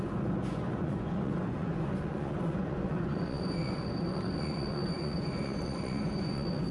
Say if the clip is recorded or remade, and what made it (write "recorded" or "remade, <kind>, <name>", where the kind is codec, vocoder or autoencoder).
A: remade, vocoder, Vocos